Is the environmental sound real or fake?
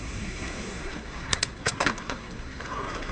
fake